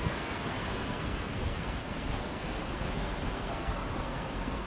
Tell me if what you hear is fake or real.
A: fake